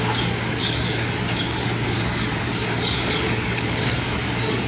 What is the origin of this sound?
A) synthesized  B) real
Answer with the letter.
A